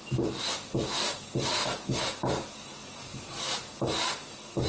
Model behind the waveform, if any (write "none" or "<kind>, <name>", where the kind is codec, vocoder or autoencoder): none